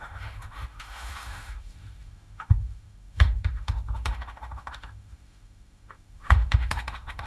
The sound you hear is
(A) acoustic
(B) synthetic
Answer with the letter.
B